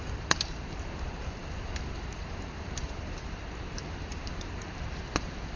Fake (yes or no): yes